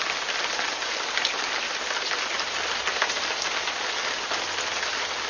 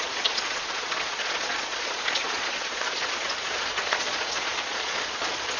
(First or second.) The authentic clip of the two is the first